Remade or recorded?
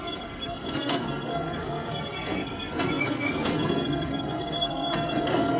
remade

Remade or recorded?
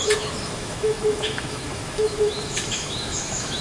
remade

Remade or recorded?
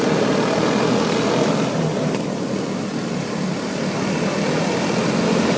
recorded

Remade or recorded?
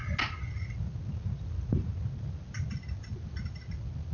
recorded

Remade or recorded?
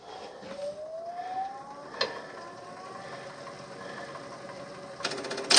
recorded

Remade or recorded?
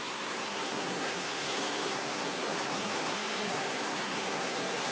remade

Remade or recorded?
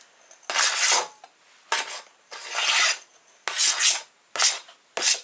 recorded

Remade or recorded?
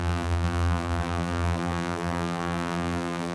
remade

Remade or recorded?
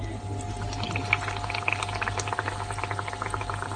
recorded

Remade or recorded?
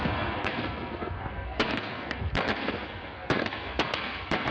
remade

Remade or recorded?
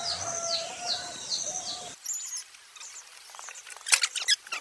recorded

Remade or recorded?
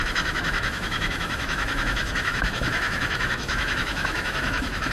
remade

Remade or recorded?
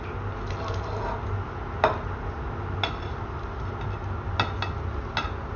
recorded